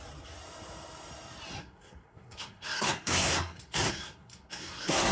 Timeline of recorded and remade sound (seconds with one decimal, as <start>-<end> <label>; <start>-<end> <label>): 0.0-1.6 recorded; 1.6-5.1 remade